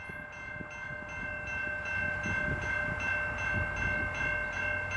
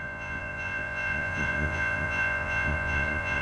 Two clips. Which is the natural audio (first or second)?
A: first